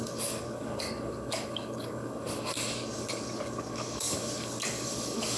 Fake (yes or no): yes